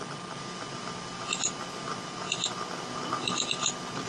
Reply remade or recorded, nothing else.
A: recorded